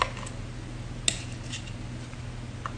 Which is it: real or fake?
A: real